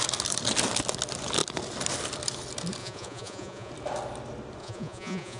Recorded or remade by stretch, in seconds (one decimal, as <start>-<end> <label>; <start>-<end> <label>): 0.0-2.8 recorded; 2.8-3.7 remade; 3.7-4.6 recorded; 4.6-5.4 remade

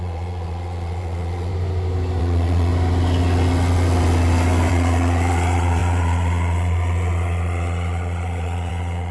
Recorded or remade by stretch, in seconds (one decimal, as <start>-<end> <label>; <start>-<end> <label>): 0.0-1.5 remade; 1.5-2.2 recorded; 2.2-2.7 remade; 2.7-4.7 recorded; 4.7-9.1 remade

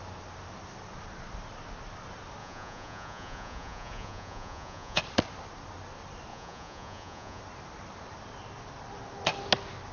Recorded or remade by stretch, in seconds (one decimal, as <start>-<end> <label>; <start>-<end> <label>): 0.0-2.4 recorded; 2.4-5.0 remade; 5.0-6.3 recorded; 6.3-7.4 remade; 7.4-9.9 recorded

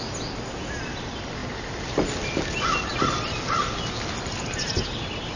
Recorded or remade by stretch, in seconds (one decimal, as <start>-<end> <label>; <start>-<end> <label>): 0.0-5.4 recorded

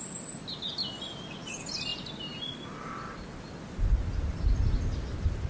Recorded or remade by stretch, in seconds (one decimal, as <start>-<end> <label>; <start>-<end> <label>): 0.0-5.5 recorded

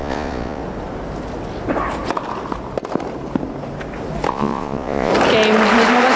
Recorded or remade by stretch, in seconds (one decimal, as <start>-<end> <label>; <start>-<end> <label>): 0.0-0.6 remade; 0.6-4.3 recorded; 4.3-5.1 remade; 5.1-6.2 recorded